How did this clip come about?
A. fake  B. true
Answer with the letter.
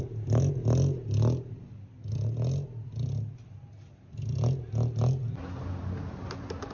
B